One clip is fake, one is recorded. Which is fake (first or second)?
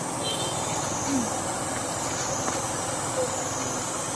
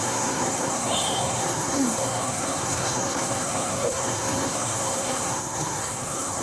second